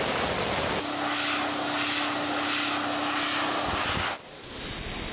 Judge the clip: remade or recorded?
recorded